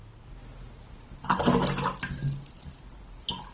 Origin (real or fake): real